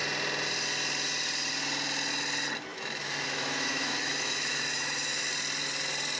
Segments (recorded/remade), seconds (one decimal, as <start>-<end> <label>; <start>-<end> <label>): 0.0-2.7 recorded; 2.7-5.3 remade; 5.3-6.2 recorded